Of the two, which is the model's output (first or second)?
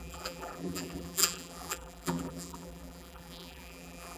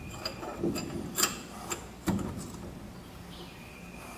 first